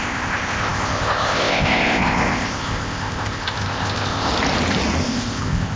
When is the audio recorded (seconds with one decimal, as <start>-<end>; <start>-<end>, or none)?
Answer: 4.3-5.0